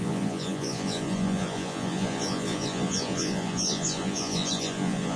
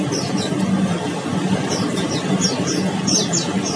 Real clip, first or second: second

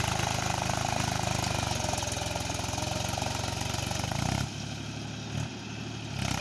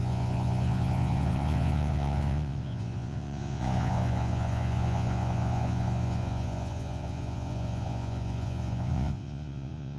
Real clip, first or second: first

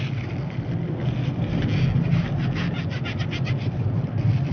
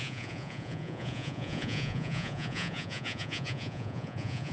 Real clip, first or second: first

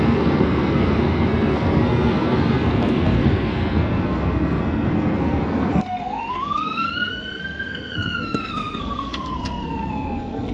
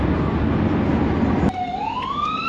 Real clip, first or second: second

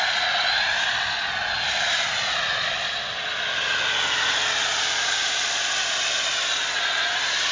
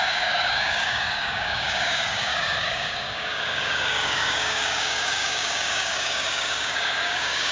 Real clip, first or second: first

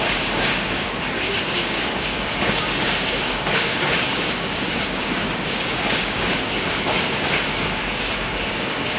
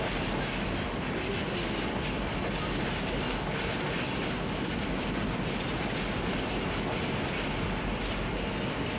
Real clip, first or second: second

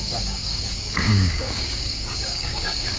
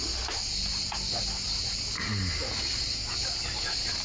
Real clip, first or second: second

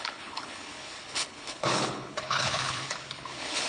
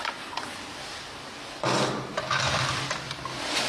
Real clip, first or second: second